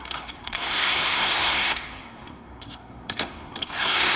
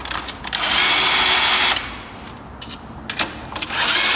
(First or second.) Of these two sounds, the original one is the second